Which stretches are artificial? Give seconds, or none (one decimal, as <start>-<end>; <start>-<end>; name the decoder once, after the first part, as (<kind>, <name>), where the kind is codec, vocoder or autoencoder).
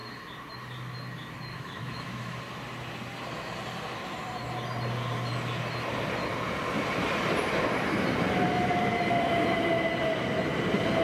1.5-2.4 (autoencoder, DAC-VAE)